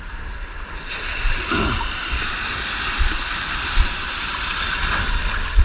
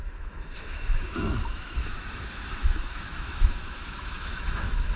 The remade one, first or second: second